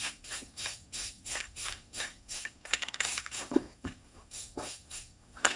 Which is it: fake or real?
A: fake